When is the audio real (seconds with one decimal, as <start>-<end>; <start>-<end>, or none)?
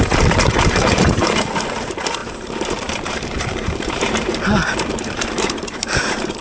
4.3-5.0